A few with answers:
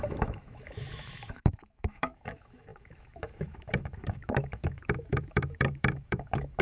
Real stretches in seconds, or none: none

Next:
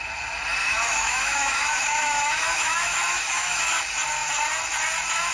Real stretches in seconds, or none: 0.0-0.6; 3.8-5.3

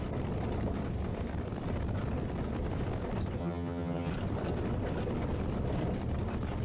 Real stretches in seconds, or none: 0.0-3.4; 4.1-6.6

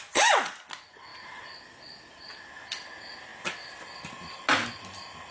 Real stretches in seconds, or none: 0.0-5.3

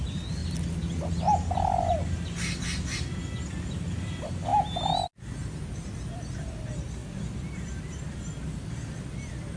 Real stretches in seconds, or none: 0.0-9.6